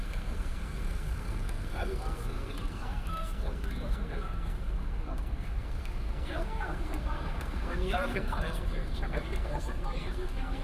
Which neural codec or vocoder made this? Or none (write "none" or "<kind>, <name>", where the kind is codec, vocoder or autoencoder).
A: codec, SNAC